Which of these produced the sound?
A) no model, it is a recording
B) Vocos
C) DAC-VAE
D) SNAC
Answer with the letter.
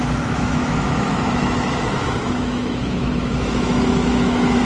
C